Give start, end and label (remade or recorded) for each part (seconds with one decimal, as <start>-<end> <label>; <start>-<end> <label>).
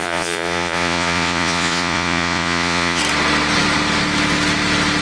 0.0-3.0 remade; 3.0-5.0 recorded